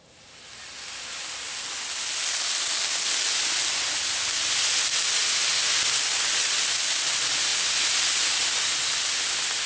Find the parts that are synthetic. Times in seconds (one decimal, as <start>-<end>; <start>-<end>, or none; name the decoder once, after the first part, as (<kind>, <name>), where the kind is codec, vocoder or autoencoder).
none